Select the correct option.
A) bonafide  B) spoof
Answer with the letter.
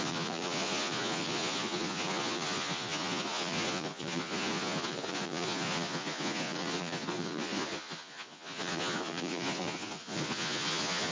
B